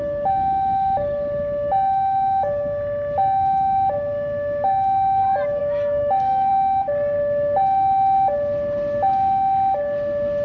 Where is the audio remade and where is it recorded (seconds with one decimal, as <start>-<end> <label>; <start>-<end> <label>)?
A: 0.0-5.6 recorded; 5.6-6.5 remade; 6.5-10.4 recorded

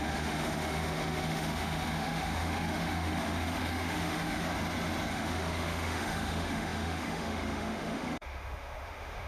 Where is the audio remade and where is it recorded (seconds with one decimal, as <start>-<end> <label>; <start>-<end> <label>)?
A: 0.0-4.5 remade; 4.5-5.1 recorded; 5.1-9.3 remade

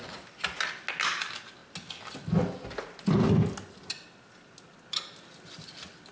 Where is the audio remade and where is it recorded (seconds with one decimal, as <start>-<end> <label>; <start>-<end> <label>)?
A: 0.0-6.1 recorded

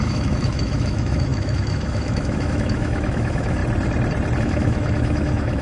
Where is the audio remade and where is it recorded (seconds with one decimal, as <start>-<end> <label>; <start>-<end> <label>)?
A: 0.0-3.6 remade; 3.6-4.4 recorded; 4.4-5.6 remade